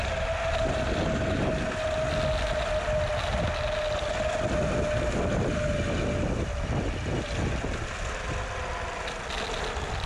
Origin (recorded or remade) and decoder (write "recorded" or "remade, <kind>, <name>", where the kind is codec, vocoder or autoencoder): recorded